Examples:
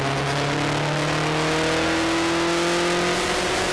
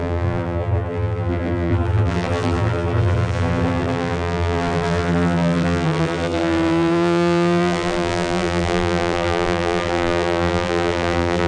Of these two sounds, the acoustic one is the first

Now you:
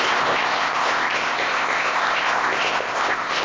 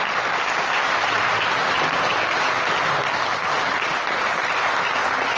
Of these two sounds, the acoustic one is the second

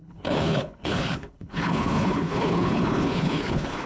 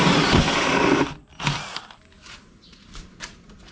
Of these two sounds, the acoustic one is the second